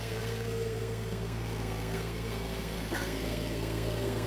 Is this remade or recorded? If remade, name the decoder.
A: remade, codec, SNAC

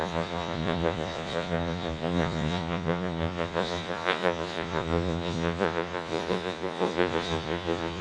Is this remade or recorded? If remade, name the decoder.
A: remade, vocoder, Vocos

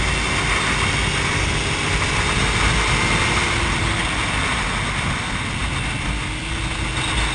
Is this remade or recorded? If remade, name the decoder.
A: recorded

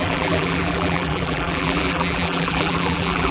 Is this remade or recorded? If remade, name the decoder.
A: remade, vocoder, BigVGAN v2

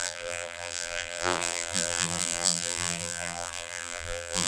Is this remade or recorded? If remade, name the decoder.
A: remade, vocoder, BigVGAN v2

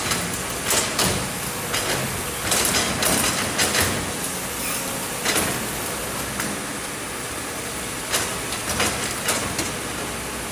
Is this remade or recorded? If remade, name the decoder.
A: recorded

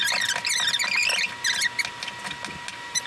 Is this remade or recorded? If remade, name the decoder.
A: recorded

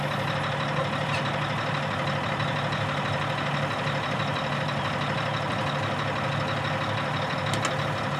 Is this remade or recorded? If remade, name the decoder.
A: recorded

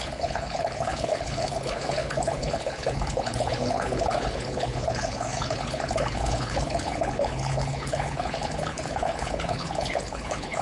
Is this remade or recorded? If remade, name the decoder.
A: remade, codec, HILCodec